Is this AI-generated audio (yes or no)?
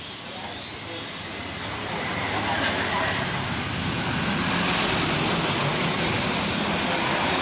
no